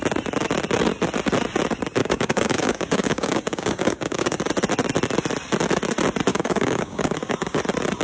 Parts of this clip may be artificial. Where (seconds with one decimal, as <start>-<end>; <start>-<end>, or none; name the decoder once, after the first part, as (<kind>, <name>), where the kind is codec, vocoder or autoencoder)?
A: 2.0-4.4 (codec, DAC); 6.3-7.6